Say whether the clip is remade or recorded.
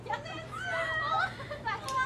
remade